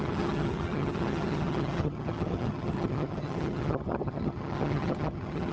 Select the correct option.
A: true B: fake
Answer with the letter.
B